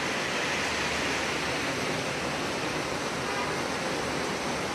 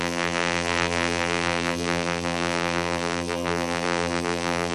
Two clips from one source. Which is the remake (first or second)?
second